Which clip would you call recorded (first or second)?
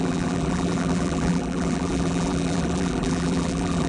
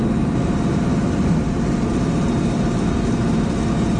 second